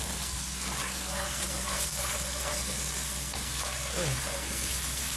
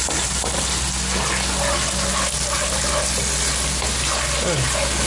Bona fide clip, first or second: second